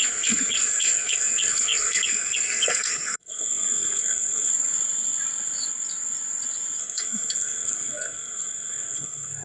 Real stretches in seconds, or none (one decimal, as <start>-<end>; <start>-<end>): 4.5-6.8